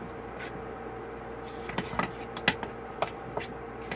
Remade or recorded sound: recorded